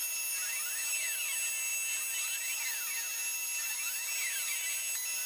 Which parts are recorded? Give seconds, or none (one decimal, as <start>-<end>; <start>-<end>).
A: 0.0-5.3